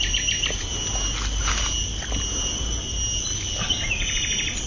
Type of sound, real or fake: real